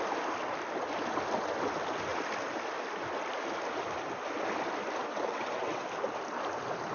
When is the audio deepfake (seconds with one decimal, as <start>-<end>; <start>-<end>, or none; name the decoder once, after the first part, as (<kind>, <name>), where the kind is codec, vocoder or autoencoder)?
5.1-5.8 (vocoder, WaveNeXt)